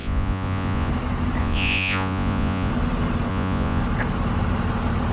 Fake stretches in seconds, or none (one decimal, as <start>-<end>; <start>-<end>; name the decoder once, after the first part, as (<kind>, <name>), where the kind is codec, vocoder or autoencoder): 0.0-0.9 (vocoder, Vocos); 1.4-2.7; 3.3-3.8